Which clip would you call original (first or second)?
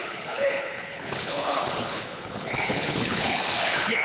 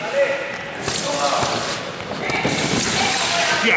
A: second